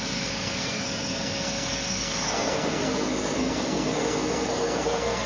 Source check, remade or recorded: remade